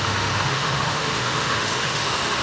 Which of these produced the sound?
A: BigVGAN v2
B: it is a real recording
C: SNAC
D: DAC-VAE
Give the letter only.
D